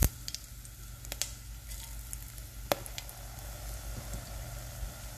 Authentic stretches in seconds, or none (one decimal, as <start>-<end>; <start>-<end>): 0.0-5.2